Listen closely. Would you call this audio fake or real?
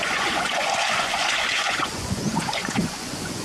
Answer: fake